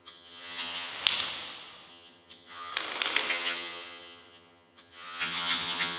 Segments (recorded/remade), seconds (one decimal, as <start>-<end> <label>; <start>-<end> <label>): 0.0-0.9 remade; 0.9-1.9 recorded; 1.9-2.7 remade; 2.7-3.3 recorded; 3.3-6.0 remade